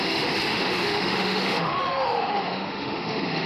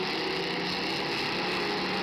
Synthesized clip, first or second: first